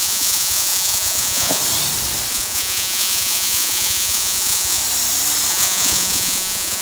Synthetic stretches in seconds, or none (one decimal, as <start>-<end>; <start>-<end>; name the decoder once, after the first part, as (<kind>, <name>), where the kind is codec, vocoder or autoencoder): 0.0-1.6 (vocoder, Vocos); 2.3-4.8; 5.5-6.8